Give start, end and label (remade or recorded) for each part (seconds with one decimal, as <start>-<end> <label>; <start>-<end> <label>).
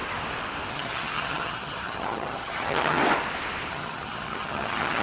0.0-0.7 recorded; 0.7-3.0 remade; 3.0-3.7 recorded; 3.7-5.0 remade